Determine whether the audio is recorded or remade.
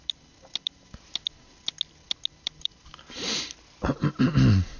recorded